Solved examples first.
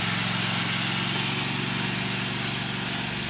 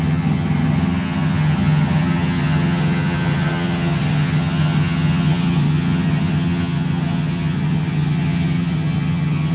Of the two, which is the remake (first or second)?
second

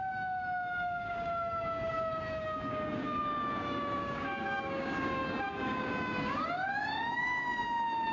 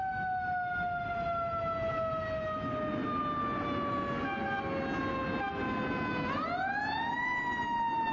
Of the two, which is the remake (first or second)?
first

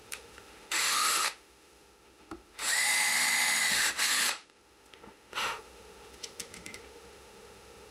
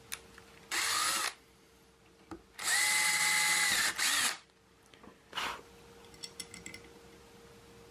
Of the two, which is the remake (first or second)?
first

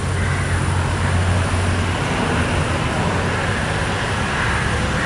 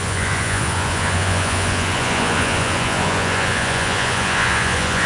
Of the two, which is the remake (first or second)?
second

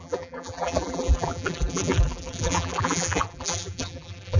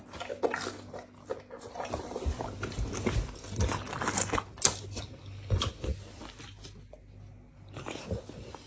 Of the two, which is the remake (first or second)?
first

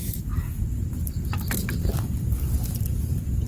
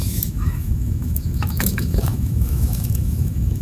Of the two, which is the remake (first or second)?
second